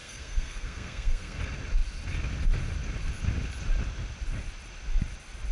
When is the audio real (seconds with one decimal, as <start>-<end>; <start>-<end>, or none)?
1.4-5.5